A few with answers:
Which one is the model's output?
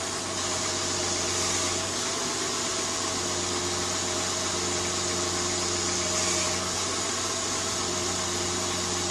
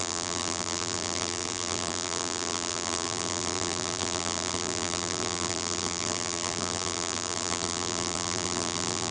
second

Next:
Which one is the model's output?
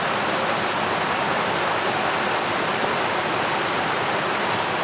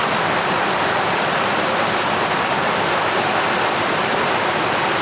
second